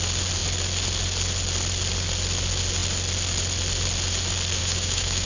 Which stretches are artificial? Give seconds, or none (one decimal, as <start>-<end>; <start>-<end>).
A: 4.6-5.3